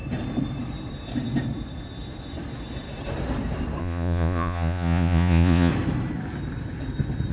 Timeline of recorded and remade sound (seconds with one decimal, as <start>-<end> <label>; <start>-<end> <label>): 0.0-3.8 recorded; 3.8-5.7 remade; 5.7-7.3 recorded